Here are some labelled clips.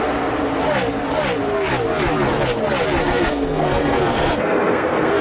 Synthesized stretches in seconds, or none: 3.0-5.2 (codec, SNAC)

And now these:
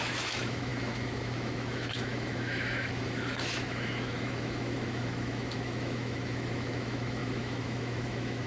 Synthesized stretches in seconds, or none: 0.0-8.5 (autoencoder, DAC-VAE)

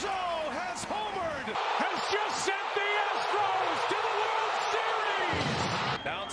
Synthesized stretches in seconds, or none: 0.0-0.8 (vocoder, BigVGAN v2); 1.3-2.8; 3.6-6.3

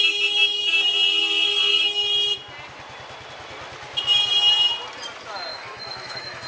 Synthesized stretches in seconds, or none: 5.5-6.5 (autoencoder, DAC-VAE)

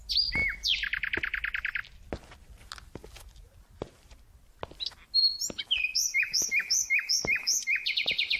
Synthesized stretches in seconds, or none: 6.0-7.6 (autoencoder, DAC-VAE)

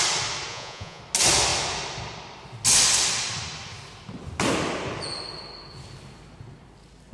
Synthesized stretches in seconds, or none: 0.5-1.0 (vocoder, Vocos)